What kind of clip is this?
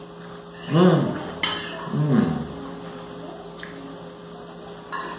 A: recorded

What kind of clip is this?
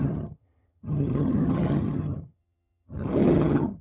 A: remade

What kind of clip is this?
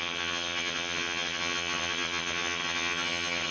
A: remade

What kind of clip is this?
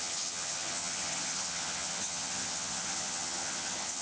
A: remade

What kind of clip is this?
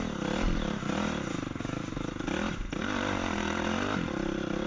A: recorded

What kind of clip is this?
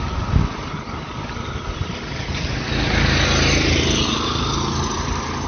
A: recorded